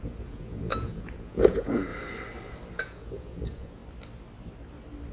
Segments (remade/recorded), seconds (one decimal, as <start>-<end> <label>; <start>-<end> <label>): 0.0-1.9 remade; 1.9-2.8 recorded; 2.8-3.8 remade; 3.8-5.1 recorded